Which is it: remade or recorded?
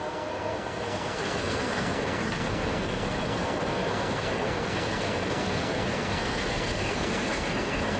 remade